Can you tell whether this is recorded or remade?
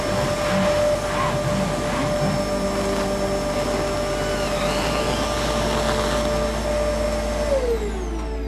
recorded